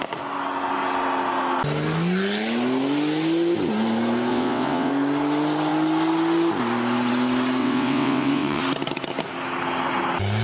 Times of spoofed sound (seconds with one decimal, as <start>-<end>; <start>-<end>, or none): 4.3-4.9; 7.6-8.6